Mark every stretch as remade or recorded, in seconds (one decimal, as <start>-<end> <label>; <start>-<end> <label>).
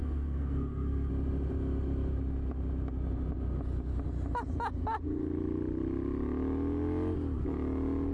0.0-1.1 remade; 1.1-8.1 recorded